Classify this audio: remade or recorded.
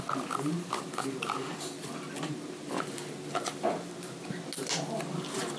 recorded